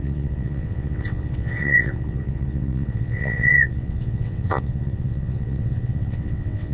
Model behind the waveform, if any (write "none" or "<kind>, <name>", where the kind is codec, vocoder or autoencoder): vocoder, WaveNeXt